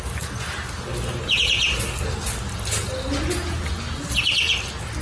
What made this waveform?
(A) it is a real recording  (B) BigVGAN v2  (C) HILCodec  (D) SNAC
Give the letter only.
A